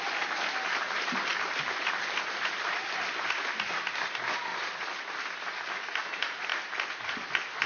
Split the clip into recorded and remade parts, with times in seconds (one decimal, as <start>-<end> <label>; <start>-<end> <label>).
0.0-7.7 recorded